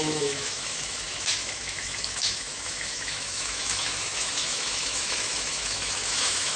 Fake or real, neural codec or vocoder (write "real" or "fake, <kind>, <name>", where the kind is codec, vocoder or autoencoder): fake, autoencoder, DAC-VAE